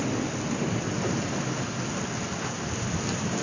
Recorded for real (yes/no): yes